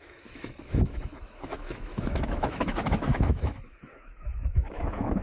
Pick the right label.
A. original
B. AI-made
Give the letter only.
B